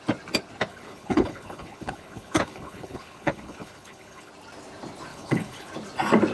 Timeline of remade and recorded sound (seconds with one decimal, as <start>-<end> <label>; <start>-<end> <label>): 0.0-0.7 recorded; 0.7-4.3 remade; 4.3-5.1 recorded; 5.1-5.7 remade; 5.7-6.3 recorded